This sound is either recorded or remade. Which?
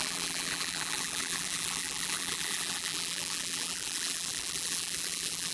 remade